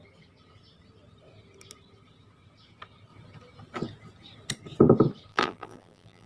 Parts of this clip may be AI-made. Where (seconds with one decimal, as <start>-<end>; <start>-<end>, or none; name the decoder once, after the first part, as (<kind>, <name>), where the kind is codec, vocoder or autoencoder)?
5.3-6.3 (vocoder, BigVGAN v2)